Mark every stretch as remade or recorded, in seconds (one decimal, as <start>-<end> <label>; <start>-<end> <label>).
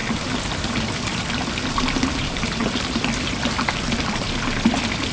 0.0-5.1 recorded